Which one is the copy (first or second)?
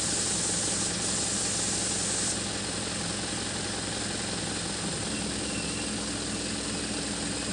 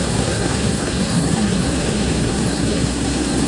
second